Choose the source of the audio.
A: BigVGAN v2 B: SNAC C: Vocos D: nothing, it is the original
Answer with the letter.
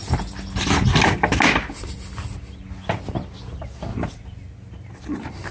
D